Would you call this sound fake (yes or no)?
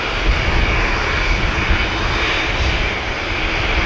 no